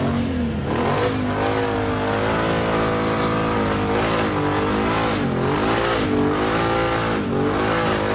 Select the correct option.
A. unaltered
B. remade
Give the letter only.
A